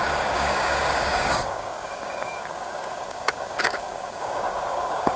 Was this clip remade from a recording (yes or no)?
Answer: yes